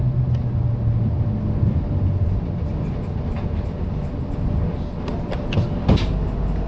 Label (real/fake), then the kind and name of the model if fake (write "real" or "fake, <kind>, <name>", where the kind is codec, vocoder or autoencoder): real